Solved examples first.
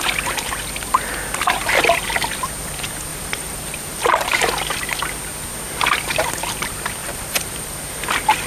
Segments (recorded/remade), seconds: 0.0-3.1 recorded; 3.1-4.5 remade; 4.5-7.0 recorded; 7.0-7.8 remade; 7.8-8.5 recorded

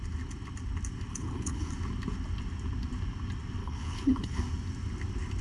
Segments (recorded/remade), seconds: 0.0-1.1 recorded; 1.1-1.7 remade; 1.7-3.6 recorded; 3.6-4.4 remade; 4.4-5.4 recorded